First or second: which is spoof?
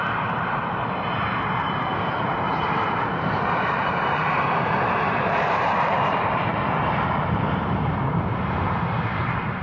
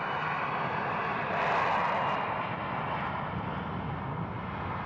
first